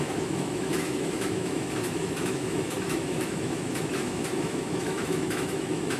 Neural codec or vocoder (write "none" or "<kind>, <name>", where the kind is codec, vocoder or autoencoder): autoencoder, DAC-VAE